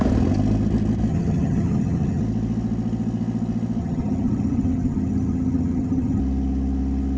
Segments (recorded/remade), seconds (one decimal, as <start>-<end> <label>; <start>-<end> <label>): 0.0-1.1 recorded; 1.1-2.2 remade; 2.2-3.8 recorded; 3.8-6.2 remade; 6.2-7.2 recorded